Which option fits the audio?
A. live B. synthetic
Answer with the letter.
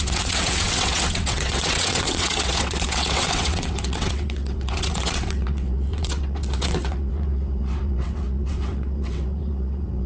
B